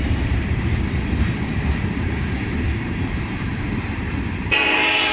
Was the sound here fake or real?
fake